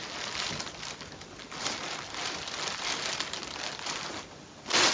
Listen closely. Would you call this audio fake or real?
real